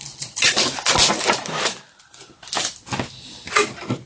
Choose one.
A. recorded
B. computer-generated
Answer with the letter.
A